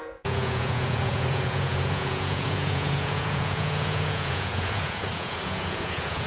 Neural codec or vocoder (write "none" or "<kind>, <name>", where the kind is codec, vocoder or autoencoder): vocoder, Vocos